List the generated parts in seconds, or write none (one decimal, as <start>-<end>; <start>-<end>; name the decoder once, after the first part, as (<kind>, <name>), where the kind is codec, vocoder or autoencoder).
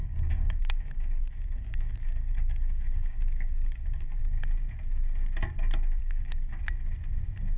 0.0-4.2 (codec, DAC); 6.0-6.6